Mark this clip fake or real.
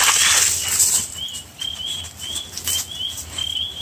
real